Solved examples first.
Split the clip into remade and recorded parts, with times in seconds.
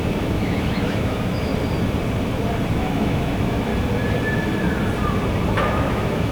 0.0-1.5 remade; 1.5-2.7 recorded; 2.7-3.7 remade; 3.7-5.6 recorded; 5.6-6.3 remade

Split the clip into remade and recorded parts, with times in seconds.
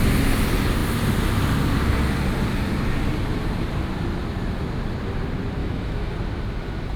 0.0-5.6 recorded; 5.6-6.1 remade; 6.1-7.0 recorded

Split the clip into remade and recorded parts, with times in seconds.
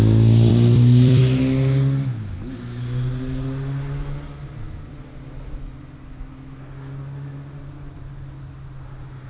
0.0-0.5 recorded; 0.5-1.2 remade; 1.2-9.3 recorded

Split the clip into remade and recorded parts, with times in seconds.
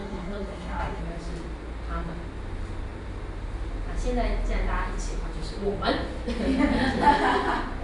0.0-1.0 remade; 1.0-7.8 recorded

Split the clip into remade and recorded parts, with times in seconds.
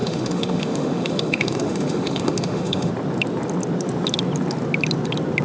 0.0-2.9 remade; 2.9-5.4 recorded